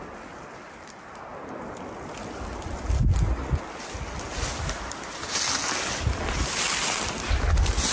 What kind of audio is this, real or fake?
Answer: real